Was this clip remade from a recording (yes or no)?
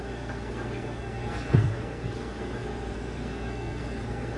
yes